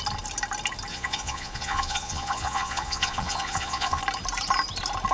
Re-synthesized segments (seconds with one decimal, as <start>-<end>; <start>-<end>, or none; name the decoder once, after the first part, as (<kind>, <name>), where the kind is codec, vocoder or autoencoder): 0.9-4.0 (vocoder, Vocos)